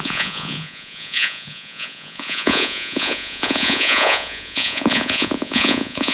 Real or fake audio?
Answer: fake